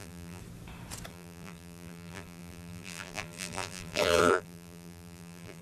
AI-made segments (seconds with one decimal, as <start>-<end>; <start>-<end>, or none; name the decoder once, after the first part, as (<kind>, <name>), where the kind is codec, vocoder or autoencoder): 0.0-0.4 (vocoder, BigVGAN v2); 1.1-5.6